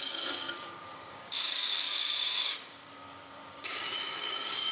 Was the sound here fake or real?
fake